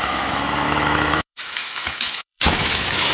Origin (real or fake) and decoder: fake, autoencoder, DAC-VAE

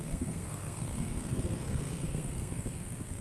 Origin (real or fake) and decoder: fake, codec, SNAC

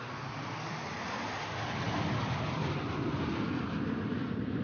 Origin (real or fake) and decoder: real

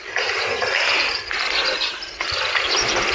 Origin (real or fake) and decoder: real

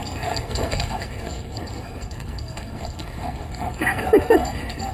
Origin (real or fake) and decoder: fake, codec, SNAC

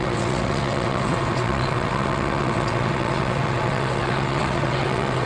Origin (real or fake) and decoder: fake, vocoder, WaveNeXt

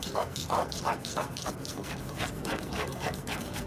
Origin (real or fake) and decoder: fake, codec, SNAC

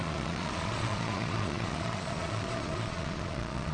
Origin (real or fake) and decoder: fake, vocoder, Vocos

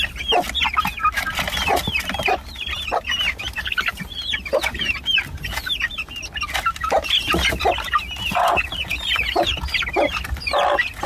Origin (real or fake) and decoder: real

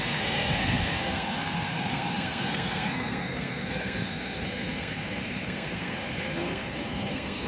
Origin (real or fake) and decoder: fake, codec, SNAC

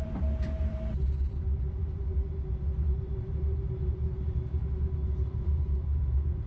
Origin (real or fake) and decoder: fake, vocoder, BigVGAN v2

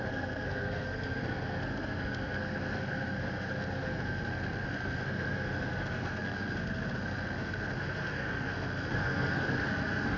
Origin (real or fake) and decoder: fake, codec, SNAC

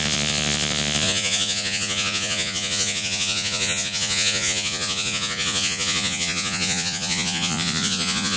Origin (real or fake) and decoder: fake, vocoder, Vocos